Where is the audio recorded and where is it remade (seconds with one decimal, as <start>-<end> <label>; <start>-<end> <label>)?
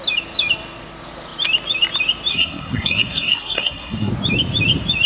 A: 0.0-2.3 recorded; 2.3-4.1 remade; 4.1-5.1 recorded